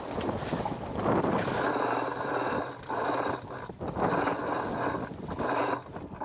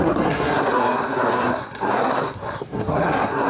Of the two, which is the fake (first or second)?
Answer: second